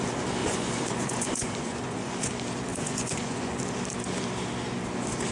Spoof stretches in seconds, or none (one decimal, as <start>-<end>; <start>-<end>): 0.4-2.3; 2.7-3.6